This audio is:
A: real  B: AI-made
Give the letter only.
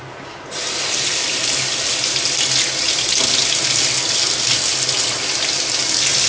A